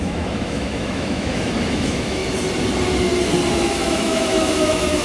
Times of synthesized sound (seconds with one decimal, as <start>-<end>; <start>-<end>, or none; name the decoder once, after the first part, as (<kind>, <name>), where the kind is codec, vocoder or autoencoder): 0.0-2.2 (autoencoder, DAC-VAE); 3.5-5.0